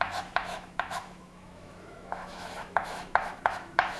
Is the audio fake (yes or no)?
yes